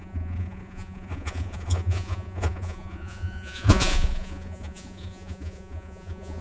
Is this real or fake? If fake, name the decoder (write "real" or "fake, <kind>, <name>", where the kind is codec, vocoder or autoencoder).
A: fake, vocoder, Vocos